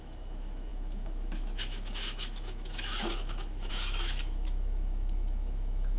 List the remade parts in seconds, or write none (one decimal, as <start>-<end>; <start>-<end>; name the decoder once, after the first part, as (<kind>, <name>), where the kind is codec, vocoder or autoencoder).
0.0-6.0 (autoencoder, DAC-VAE)